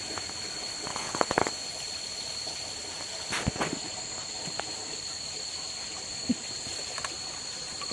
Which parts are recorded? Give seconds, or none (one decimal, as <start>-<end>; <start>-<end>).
0.0-0.9; 1.5-7.9